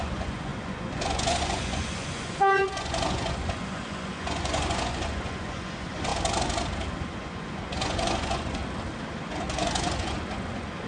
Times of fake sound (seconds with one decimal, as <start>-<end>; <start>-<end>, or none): 0.0-6.1; 6.9-8.6; 9.2-10.9